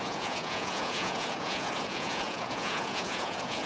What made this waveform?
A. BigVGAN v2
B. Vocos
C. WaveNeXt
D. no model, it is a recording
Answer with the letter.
B